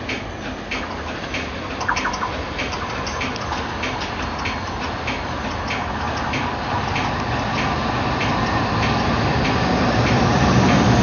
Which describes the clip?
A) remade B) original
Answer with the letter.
B